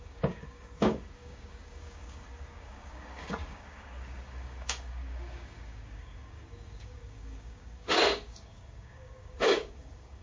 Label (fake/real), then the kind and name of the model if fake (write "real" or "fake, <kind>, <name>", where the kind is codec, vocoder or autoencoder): fake, codec, DAC